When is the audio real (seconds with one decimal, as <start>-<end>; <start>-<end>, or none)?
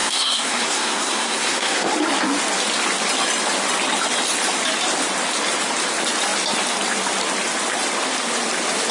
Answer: 1.9-8.9